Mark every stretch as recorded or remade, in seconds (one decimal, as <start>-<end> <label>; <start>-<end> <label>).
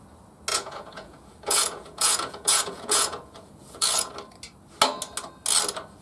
0.0-0.5 recorded; 0.5-4.1 remade; 4.1-6.0 recorded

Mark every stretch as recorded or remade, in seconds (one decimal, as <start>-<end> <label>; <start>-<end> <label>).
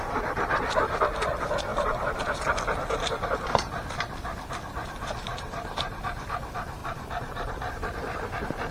0.0-5.3 recorded; 5.3-6.0 remade; 6.0-6.8 recorded; 6.8-7.7 remade; 7.7-8.7 recorded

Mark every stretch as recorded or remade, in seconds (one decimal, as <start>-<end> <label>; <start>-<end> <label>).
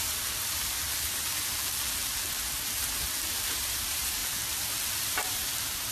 0.0-1.3 remade; 1.3-3.5 recorded; 3.5-4.2 remade; 4.2-5.0 recorded; 5.0-5.9 remade